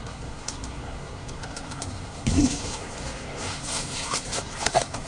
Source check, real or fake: fake